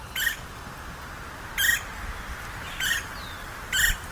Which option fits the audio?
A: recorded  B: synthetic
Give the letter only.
A